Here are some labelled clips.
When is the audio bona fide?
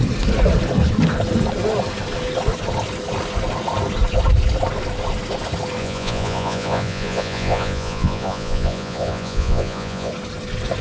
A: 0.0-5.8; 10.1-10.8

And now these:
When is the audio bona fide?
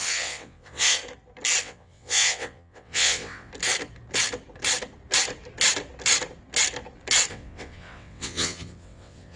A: 1.0-1.6; 3.5-7.3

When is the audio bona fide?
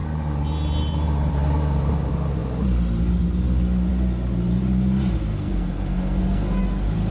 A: 0.0-5.3; 6.6-7.1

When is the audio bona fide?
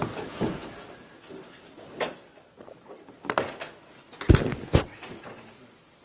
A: 0.0-6.0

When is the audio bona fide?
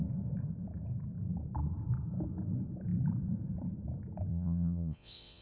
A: 0.0-4.3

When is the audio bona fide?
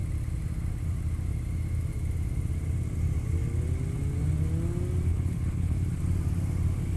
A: 0.0-5.1; 6.0-7.0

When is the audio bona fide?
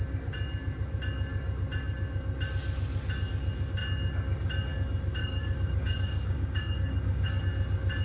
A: 0.0-5.2; 7.4-8.0